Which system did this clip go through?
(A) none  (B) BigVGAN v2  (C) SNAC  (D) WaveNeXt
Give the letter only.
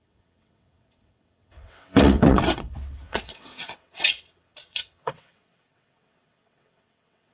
D